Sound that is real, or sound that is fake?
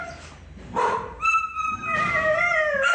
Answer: fake